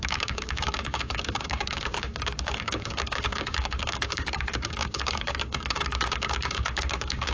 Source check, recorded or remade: remade